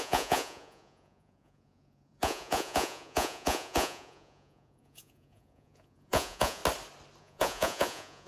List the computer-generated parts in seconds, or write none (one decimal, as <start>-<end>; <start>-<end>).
0.0-6.6; 7.2-8.3